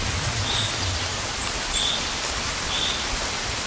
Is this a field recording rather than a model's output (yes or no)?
yes